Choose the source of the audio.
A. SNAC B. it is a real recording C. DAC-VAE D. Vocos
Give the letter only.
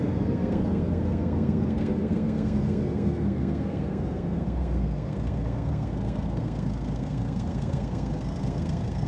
A